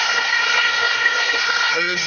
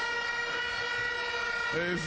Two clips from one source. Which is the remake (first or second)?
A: first